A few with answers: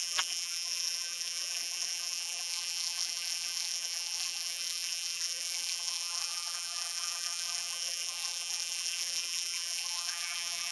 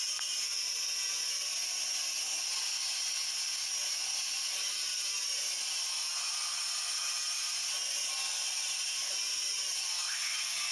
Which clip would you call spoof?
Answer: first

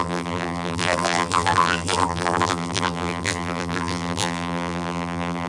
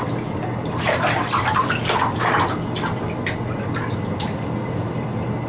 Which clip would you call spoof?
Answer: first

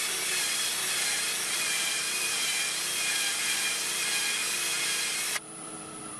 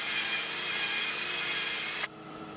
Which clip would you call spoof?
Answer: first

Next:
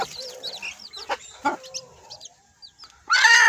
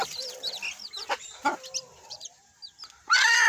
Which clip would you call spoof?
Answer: second